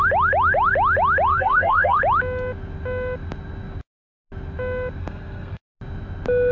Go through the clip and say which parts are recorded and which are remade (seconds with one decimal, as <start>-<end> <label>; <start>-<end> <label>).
0.0-1.3 recorded; 1.3-2.0 remade; 2.0-5.0 recorded; 5.0-5.6 remade; 5.6-6.5 recorded